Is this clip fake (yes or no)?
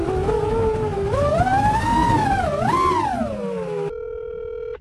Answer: no